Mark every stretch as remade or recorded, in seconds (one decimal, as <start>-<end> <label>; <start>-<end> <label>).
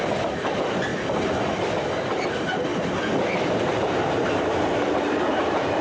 0.0-0.9 remade; 0.9-2.3 recorded; 2.3-2.7 remade; 2.7-3.2 recorded; 3.2-5.8 remade